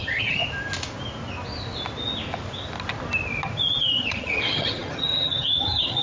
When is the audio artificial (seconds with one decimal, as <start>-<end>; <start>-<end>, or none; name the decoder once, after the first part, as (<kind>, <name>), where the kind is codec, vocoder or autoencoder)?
0.0-0.4 (vocoder, HiFi-GAN); 3.8-6.0